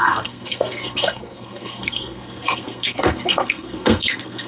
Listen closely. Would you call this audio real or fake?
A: fake